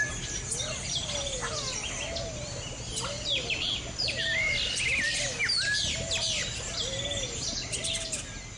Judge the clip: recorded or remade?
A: recorded